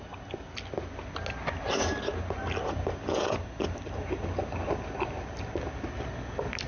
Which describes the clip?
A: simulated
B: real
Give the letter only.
B